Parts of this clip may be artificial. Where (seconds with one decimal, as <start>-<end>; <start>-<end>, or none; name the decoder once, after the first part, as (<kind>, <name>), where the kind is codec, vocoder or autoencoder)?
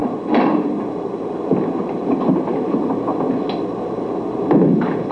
0.0-1.8 (vocoder, BigVGAN v2)